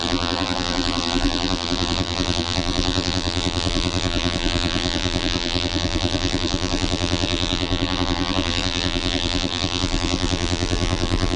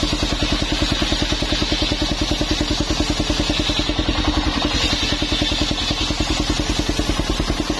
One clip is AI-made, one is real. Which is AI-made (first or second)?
first